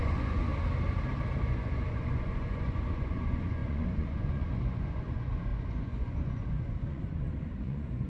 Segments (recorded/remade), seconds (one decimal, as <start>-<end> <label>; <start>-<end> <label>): 0.0-0.5 remade; 0.5-1.4 recorded; 1.4-8.1 remade